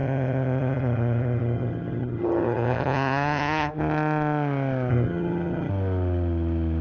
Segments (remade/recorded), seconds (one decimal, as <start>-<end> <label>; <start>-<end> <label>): 0.0-3.7 remade; 3.7-4.9 recorded; 4.9-5.7 remade; 5.7-6.8 recorded